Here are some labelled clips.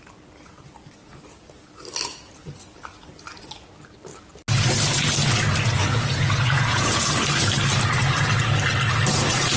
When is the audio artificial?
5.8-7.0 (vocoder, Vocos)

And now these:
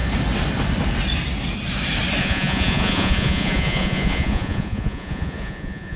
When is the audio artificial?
2.2-6.0 (vocoder, Vocos)

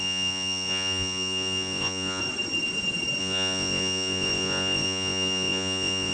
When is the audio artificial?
0.0-2.2 (vocoder, Vocos); 3.2-6.1